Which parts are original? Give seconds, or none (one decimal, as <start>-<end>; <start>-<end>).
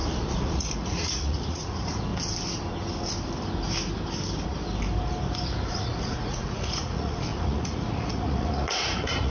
2.1-5.7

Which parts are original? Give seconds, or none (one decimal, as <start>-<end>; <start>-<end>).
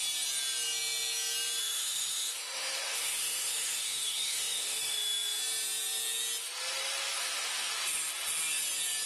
0.0-1.6; 5.4-7.2; 7.7-9.1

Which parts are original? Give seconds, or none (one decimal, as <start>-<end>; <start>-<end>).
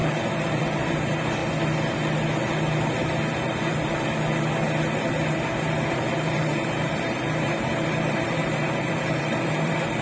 1.4-5.9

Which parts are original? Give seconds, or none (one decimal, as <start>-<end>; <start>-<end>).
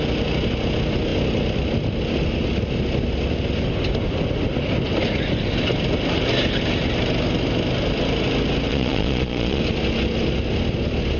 0.0-8.7; 9.6-11.2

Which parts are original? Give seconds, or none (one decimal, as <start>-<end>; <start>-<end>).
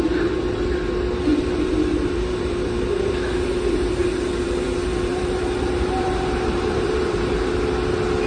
0.0-1.3; 2.8-4.0; 7.5-8.3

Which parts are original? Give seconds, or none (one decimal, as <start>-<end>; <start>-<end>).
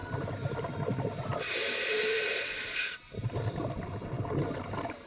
0.0-5.1